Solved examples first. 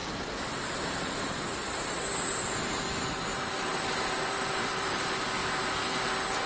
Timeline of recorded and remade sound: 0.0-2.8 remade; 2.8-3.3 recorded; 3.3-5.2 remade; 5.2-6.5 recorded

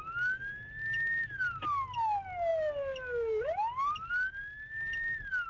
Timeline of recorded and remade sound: 0.0-5.5 recorded

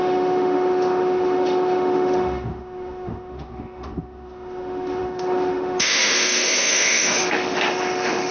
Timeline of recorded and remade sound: 0.0-8.3 remade